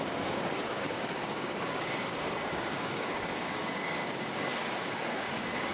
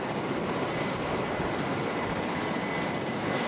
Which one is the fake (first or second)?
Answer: first